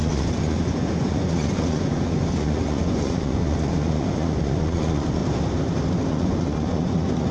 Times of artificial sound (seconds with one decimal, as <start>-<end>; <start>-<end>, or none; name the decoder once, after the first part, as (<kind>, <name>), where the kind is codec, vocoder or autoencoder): 0.0-5.2 (vocoder, Vocos); 6.1-7.3